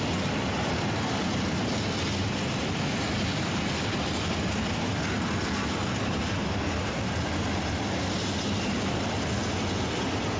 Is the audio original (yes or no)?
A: yes